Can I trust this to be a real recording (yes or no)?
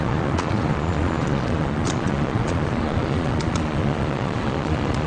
no